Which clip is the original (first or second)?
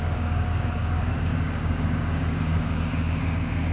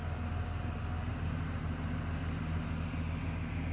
second